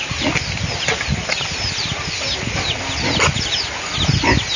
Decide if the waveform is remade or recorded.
recorded